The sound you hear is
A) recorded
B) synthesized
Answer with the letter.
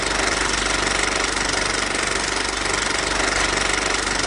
A